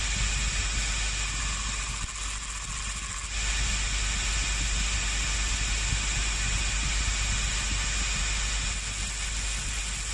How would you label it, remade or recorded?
recorded